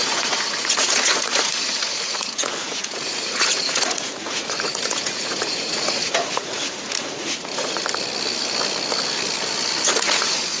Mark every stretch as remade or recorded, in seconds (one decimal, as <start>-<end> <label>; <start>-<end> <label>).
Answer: 0.0-7.8 remade; 7.8-9.9 recorded; 9.9-10.6 remade